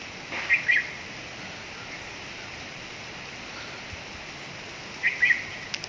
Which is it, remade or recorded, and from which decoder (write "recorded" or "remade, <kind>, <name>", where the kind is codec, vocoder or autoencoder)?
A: recorded